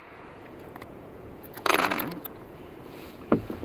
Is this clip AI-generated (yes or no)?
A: yes